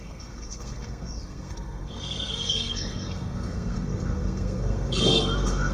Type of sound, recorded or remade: remade